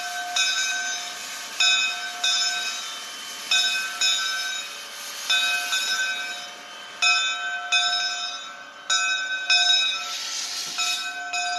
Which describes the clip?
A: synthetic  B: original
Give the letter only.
B